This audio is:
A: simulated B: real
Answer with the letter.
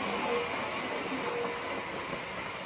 B